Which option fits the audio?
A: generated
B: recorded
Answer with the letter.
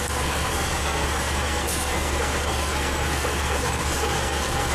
A